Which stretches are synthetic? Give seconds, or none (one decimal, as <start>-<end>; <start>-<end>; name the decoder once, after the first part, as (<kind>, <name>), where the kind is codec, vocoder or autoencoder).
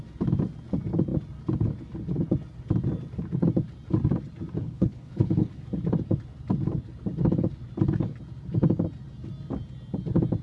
4.6-5.5 (codec, HILCodec)